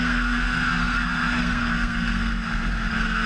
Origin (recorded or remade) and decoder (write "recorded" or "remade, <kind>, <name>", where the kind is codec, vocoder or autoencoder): remade, codec, SNAC